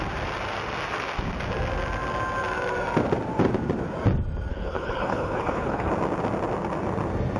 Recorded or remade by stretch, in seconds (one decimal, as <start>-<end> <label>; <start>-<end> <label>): 0.0-4.5 recorded; 4.5-5.9 remade; 5.9-7.4 recorded